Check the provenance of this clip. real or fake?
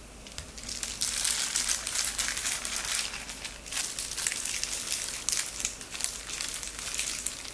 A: real